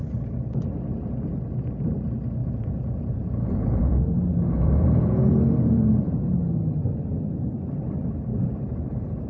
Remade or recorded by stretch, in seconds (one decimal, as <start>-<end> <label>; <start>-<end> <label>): 0.0-2.4 recorded; 2.4-6.1 remade; 6.1-6.8 recorded; 6.8-7.4 remade; 7.4-8.3 recorded; 8.3-9.3 remade